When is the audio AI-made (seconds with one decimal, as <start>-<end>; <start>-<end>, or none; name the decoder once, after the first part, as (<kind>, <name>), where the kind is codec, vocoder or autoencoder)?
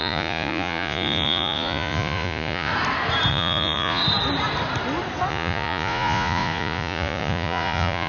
0.0-2.7 (vocoder, Vocos); 3.3-4.0; 5.3-8.1